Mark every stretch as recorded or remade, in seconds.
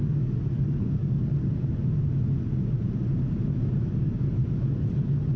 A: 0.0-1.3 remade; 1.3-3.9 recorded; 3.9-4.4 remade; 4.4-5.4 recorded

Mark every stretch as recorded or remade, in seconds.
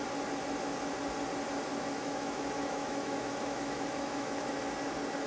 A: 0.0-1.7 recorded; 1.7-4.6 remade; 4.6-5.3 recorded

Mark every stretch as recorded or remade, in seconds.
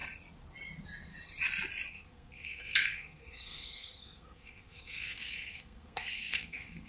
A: 0.0-1.9 recorded; 1.9-6.9 remade